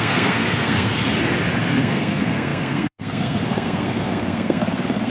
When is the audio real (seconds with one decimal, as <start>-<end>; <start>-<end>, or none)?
0.9-1.6